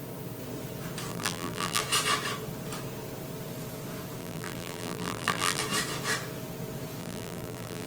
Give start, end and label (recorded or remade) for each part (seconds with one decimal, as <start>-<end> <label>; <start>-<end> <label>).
0.0-1.1 recorded; 1.1-1.8 remade; 1.8-4.2 recorded; 4.2-5.6 remade; 5.6-7.0 recorded; 7.0-7.9 remade